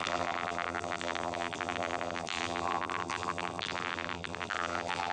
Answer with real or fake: fake